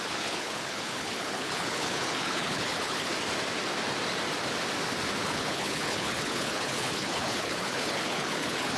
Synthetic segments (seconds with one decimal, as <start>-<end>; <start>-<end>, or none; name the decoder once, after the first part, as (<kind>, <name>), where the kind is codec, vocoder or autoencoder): 0.0-3.1 (codec, HILCodec); 5.2-8.8

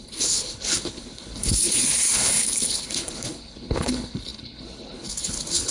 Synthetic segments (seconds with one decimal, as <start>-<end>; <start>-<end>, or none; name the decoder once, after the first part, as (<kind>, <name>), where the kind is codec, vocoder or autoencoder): 0.0-5.7 (codec, HILCodec)